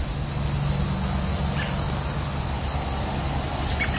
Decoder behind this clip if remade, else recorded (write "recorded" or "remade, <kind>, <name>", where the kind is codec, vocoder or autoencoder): recorded